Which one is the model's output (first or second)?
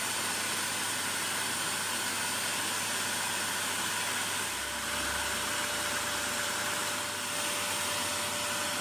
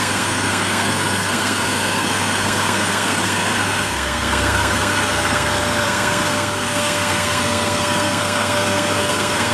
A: second